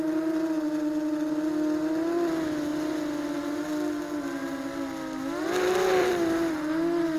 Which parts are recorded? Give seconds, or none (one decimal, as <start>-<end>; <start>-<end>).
0.0-2.7; 3.5-6.0; 6.5-7.2